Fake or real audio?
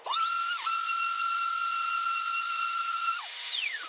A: real